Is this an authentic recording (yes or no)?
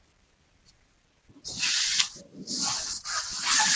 yes